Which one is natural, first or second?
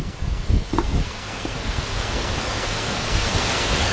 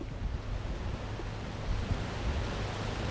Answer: second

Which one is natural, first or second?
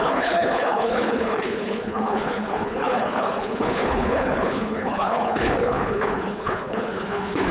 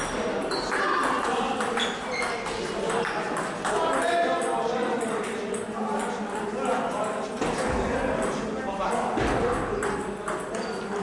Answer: second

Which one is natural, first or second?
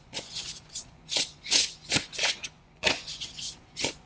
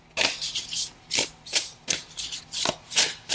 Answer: second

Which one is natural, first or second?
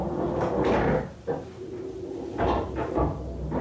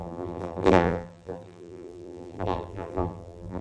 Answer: first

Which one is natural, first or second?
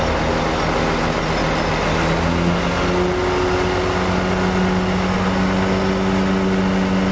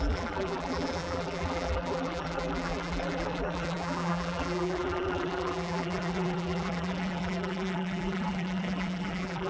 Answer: first